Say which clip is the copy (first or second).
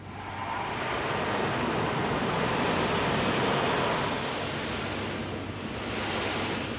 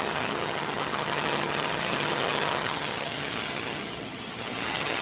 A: second